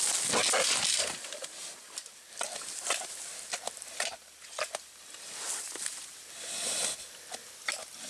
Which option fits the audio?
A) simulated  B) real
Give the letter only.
B